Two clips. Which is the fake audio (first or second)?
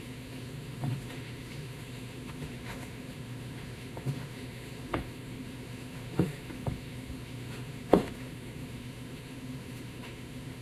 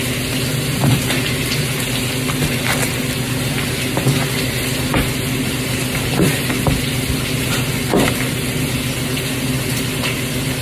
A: first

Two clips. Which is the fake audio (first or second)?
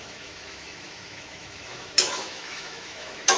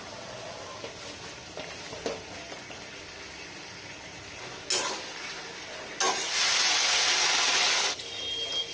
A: first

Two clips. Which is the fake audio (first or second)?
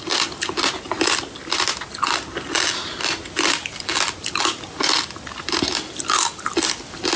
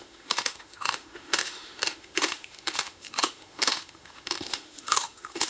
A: second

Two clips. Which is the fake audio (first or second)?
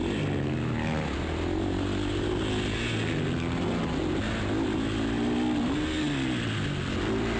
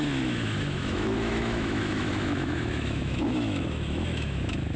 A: second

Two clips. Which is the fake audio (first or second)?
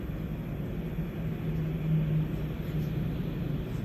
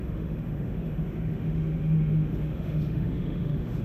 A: second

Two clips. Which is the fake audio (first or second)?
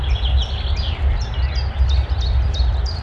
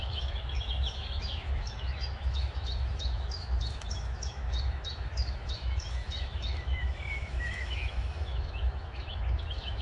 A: second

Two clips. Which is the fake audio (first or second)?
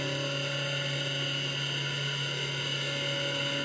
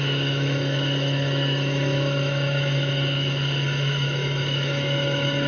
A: second